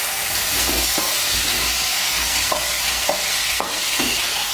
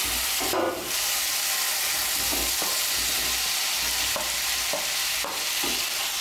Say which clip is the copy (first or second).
first